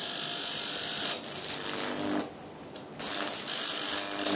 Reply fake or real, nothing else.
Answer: real